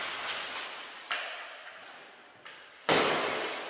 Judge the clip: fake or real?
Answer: real